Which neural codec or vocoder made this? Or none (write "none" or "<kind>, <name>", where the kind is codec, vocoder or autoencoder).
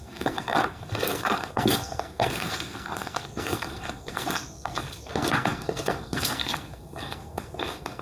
codec, SNAC